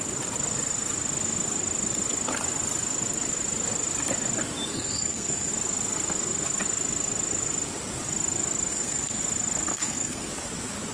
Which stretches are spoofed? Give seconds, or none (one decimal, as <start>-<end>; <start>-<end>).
4.7-5.5; 8.7-9.2; 9.7-10.3